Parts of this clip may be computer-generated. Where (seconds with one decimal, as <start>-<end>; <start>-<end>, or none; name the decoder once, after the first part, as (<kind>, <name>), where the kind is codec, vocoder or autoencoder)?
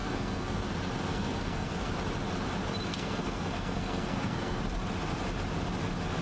0.0-0.6 (codec, SNAC); 1.1-1.9; 2.9-4.6